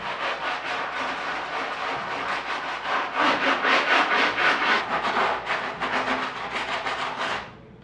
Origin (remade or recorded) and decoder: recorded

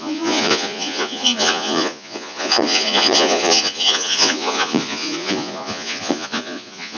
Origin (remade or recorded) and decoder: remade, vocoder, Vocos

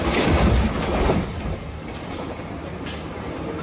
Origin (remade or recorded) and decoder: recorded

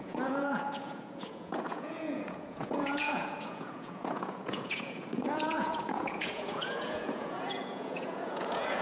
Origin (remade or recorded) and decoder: remade, vocoder, Vocos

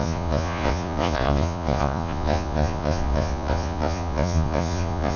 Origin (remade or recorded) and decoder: remade, vocoder, Vocos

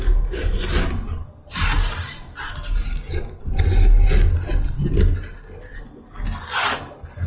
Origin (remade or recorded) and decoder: recorded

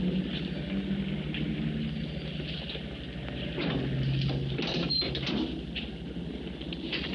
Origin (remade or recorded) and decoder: recorded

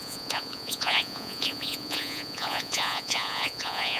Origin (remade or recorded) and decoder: remade, vocoder, Vocos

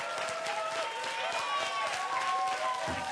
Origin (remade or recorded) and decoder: recorded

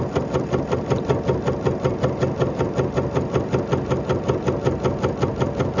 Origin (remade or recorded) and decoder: recorded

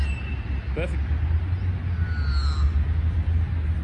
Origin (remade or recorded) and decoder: recorded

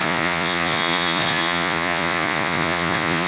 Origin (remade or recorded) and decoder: remade, vocoder, Vocos